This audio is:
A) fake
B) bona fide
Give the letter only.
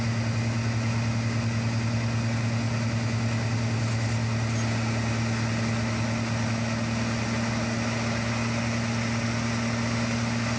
B